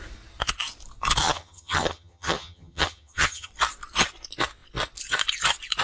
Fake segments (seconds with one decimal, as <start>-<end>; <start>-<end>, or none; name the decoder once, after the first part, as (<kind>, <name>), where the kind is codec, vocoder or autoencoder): 1.2-3.5 (vocoder, HiFi-GAN)